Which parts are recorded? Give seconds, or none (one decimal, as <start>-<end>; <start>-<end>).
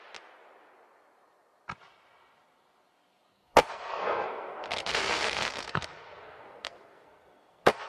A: 0.0-3.3